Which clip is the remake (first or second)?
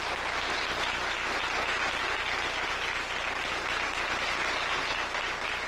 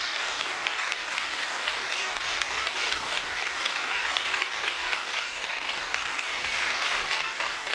second